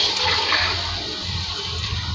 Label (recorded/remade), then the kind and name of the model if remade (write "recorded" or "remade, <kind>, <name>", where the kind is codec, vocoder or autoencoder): recorded